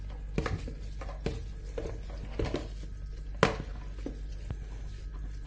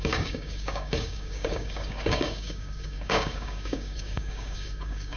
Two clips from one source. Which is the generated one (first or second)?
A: second